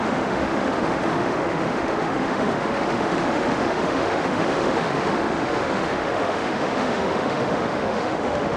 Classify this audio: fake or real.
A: fake